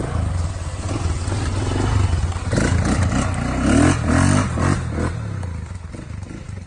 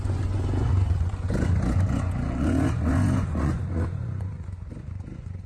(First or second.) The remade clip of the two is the second